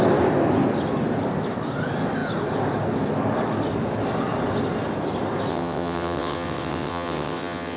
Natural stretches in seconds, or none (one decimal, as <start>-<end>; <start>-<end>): 0.0-5.5